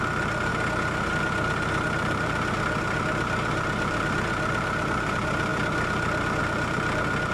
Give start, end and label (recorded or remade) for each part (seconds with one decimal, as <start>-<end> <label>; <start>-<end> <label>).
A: 0.0-0.5 remade; 0.5-1.2 recorded; 1.2-7.3 remade